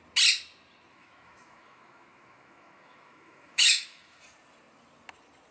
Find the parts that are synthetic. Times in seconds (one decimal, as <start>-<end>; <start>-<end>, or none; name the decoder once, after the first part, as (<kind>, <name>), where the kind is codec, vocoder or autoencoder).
0.9-4.2 (autoencoder, DAC-VAE)